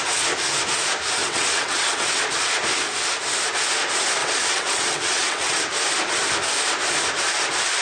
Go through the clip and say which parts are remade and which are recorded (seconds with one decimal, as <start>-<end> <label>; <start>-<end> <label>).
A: 0.0-1.2 recorded; 1.2-2.2 remade; 2.2-4.2 recorded; 4.2-5.6 remade; 5.6-7.8 recorded